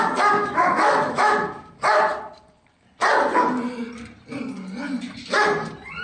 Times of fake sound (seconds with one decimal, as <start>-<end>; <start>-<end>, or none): 0.4-1.3